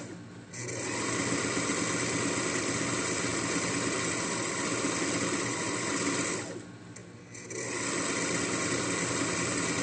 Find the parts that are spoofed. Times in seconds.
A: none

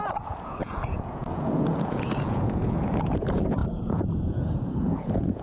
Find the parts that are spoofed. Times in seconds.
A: 0.0-5.4 (vocoder, Vocos)

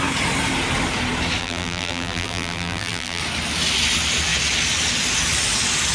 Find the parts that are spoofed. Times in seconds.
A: 1.4-3.2 (vocoder, BigVGAN v2)

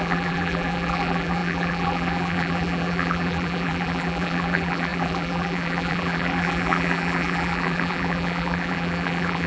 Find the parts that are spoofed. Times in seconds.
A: 0.0-9.5 (vocoder, BigVGAN v2)

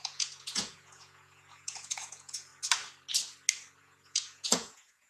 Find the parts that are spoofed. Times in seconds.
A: 0.0-2.5 (vocoder, Vocos); 3.8-5.1

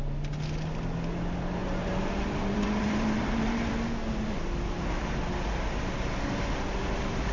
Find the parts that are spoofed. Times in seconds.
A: 1.6-3.7 (vocoder, BigVGAN v2)

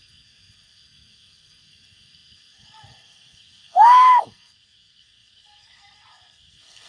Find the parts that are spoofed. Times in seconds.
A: 0.0-6.9 (codec, SNAC)